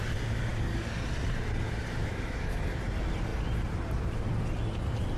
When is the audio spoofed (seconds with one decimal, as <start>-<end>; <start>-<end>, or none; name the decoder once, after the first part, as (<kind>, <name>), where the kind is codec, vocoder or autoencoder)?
2.0-2.6 (autoencoder, DAC-VAE)